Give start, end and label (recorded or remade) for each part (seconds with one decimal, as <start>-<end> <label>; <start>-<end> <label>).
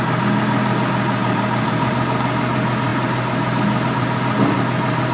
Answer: 0.0-1.2 recorded; 1.2-1.9 remade; 1.9-5.1 recorded